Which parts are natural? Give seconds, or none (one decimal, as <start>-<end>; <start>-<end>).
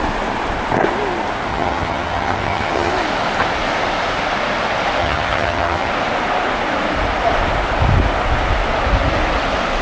0.0-1.5; 2.9-5.0; 5.9-9.8